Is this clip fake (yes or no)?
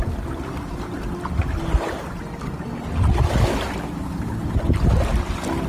no